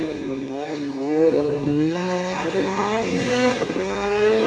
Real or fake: fake